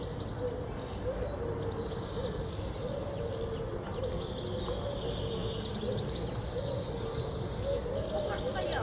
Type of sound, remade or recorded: recorded